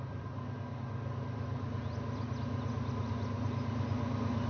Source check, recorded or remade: recorded